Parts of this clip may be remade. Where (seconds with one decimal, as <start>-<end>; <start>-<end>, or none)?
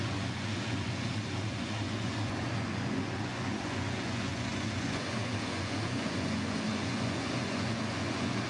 0.0-8.5